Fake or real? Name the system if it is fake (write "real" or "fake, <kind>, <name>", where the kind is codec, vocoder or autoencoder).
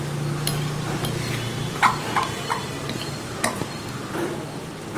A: real